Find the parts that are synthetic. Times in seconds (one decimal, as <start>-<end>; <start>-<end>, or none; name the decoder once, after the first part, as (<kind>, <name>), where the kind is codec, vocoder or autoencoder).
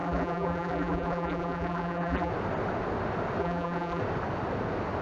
0.0-2.3 (vocoder, BigVGAN v2); 3.4-4.0